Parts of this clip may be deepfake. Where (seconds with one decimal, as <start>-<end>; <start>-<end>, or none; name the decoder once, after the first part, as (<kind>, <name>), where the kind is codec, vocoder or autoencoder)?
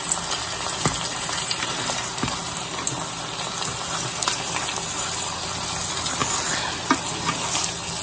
1.1-2.7 (vocoder, BigVGAN v2)